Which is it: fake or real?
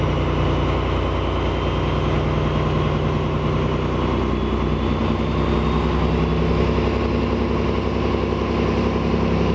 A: real